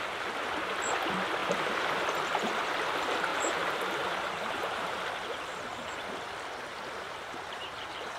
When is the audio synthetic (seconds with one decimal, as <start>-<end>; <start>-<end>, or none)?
1.4-1.9; 3.3-5.0; 6.7-8.2